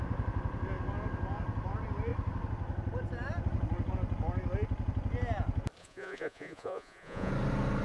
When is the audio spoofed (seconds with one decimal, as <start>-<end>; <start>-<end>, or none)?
5.8-7.3